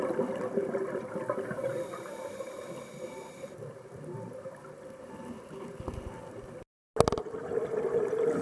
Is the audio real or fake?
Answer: real